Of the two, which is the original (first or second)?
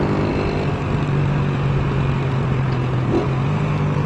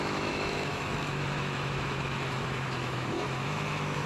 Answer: first